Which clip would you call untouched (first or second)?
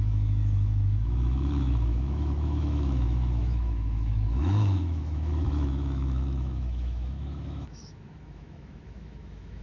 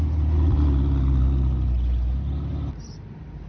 second